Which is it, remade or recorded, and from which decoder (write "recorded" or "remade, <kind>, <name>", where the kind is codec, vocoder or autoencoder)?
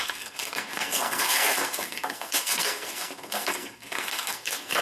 remade, codec, SNAC